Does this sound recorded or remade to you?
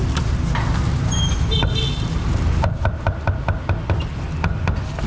recorded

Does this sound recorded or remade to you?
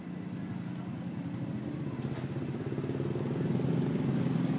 recorded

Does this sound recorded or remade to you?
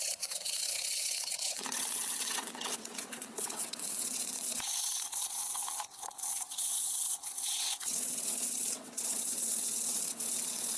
remade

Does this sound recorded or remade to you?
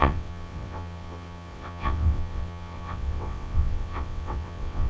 remade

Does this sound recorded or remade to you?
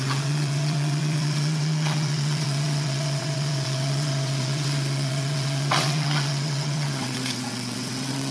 remade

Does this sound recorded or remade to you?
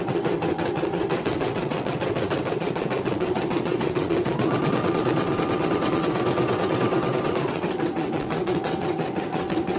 remade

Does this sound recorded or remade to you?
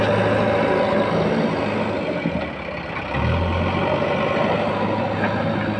recorded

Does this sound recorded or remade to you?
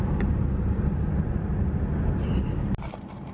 recorded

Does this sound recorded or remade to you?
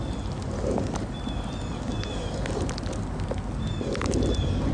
recorded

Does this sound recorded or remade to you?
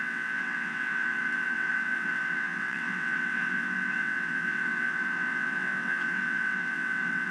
remade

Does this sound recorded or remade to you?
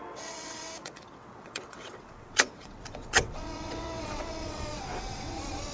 remade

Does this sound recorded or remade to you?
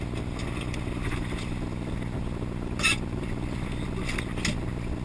recorded